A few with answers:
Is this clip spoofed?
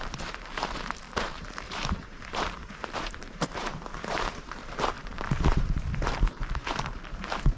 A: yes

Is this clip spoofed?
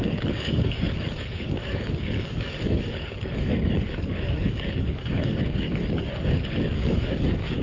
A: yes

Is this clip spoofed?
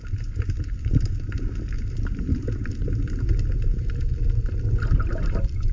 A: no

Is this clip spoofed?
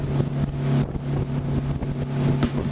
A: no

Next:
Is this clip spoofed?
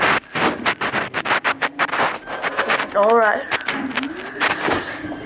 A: yes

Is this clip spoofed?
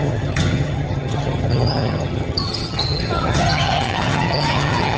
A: yes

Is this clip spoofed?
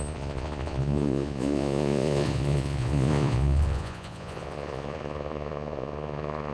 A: yes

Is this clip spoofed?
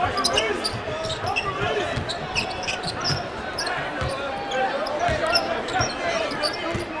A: no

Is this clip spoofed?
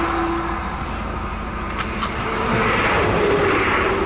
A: no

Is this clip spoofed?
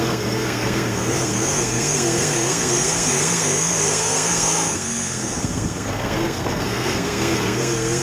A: yes